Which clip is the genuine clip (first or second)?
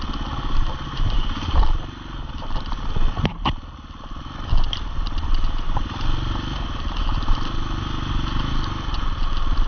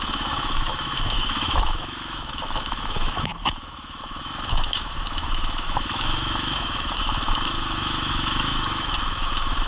first